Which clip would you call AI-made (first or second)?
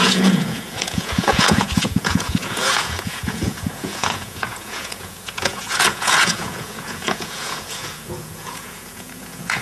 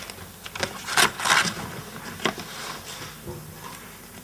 first